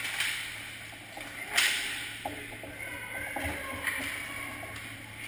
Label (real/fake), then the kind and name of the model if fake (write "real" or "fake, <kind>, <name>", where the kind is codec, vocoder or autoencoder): real